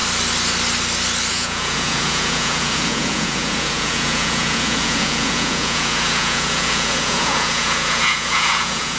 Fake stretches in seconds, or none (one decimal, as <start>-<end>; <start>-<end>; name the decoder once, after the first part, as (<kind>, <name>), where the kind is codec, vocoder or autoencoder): 1.3-9.0 (vocoder, Vocos)